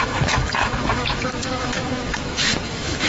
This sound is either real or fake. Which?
fake